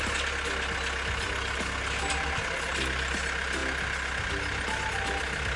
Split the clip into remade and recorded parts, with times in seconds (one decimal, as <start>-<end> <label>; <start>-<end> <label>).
0.0-5.6 recorded

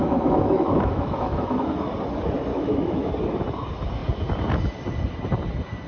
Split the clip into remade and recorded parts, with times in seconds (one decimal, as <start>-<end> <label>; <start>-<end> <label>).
0.0-1.9 remade; 1.9-2.5 recorded; 2.5-3.1 remade; 3.1-5.9 recorded

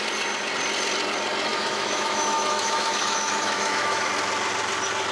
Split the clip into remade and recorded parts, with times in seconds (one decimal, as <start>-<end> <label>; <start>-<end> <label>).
0.0-1.5 recorded; 1.5-4.1 remade; 4.1-5.1 recorded

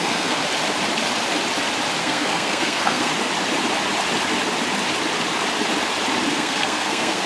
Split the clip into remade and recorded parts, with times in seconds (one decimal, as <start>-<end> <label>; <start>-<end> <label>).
0.0-0.4 remade; 0.4-2.0 recorded; 2.0-3.1 remade; 3.1-6.3 recorded; 6.3-7.3 remade

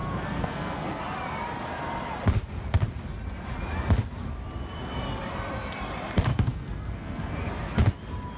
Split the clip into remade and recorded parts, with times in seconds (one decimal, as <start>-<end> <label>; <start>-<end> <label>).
0.0-1.0 remade; 1.0-6.3 recorded; 6.3-7.5 remade; 7.5-8.4 recorded

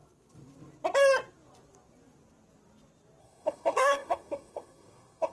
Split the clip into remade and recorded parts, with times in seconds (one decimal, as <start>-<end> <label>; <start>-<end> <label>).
0.0-3.2 recorded; 3.2-5.3 remade